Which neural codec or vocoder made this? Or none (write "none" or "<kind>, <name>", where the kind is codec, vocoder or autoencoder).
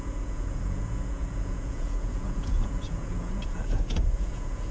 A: vocoder, Vocos